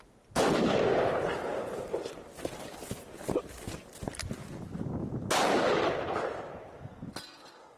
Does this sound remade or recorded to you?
recorded